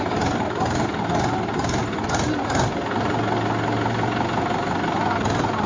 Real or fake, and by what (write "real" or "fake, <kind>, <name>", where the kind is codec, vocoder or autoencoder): real